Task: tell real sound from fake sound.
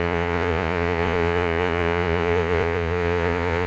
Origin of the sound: fake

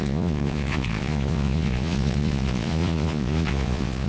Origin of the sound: fake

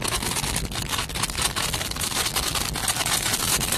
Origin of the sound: real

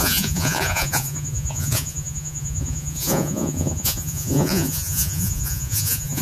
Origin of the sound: fake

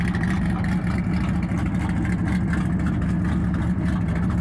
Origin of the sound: real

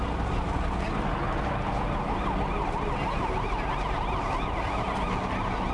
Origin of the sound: real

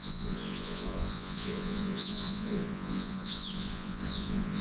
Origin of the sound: fake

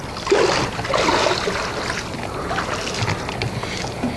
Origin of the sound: real